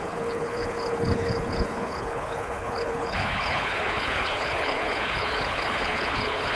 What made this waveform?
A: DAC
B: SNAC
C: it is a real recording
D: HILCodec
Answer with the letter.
D